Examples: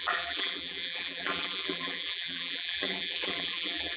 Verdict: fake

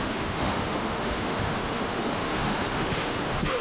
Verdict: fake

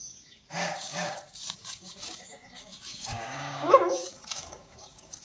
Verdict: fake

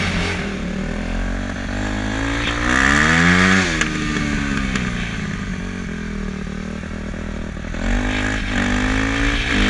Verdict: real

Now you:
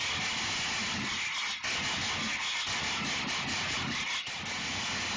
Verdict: real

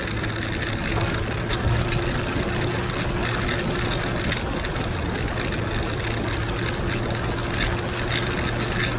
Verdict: real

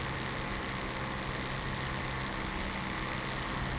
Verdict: real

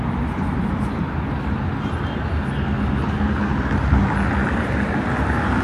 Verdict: real